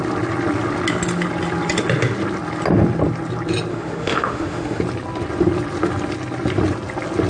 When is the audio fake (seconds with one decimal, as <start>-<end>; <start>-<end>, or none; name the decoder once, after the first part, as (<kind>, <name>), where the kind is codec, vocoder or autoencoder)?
3.7-4.8 (autoencoder, DAC-VAE)